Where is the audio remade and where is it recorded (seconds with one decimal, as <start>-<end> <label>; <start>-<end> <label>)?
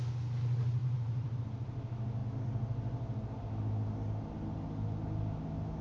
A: 0.0-0.8 recorded; 0.8-1.7 remade; 1.7-5.8 recorded